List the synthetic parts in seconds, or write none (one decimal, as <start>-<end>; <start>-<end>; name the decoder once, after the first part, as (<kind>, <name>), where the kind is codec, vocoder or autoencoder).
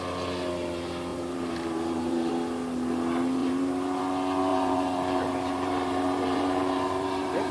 1.1-2.3 (vocoder, BigVGAN v2); 3.4-4.0; 4.5-7.5